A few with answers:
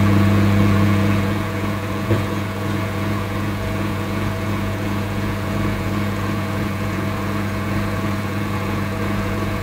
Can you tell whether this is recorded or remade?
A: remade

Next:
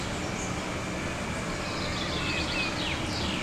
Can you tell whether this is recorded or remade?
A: recorded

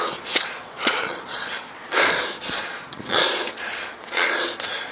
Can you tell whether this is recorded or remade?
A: remade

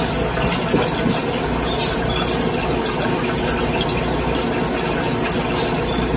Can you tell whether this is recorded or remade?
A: recorded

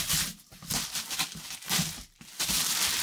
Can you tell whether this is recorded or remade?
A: recorded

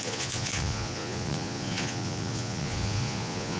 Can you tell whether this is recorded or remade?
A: remade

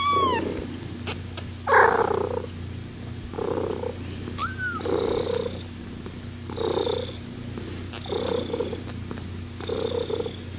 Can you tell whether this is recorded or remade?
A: recorded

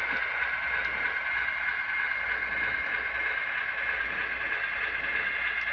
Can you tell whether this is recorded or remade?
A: recorded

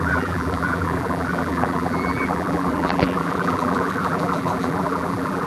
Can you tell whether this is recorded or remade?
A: remade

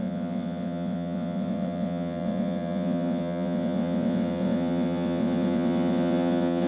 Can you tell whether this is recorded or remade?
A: remade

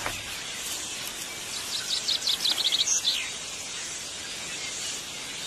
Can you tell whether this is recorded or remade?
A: recorded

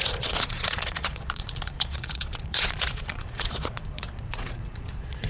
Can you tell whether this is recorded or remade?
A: remade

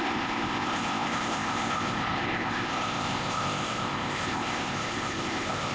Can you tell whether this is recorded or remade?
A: remade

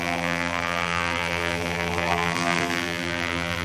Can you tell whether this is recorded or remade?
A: remade